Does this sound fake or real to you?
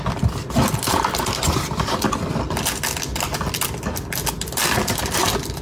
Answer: real